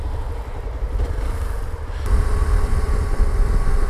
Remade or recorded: recorded